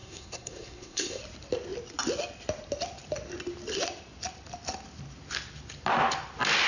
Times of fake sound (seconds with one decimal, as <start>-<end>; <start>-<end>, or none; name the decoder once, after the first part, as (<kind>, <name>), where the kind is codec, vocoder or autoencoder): 0.0-1.2 (codec, SNAC)